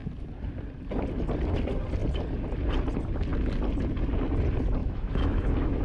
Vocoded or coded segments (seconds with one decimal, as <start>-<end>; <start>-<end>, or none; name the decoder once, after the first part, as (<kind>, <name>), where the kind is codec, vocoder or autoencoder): 4.8-5.8 (autoencoder, DAC-VAE)